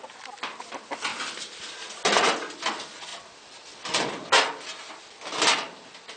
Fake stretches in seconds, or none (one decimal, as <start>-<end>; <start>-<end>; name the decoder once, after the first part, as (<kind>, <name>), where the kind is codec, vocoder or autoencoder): none